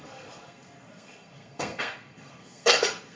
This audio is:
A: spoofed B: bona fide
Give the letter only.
A